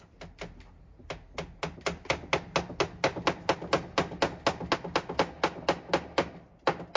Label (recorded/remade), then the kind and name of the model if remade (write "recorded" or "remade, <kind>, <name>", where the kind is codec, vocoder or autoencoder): recorded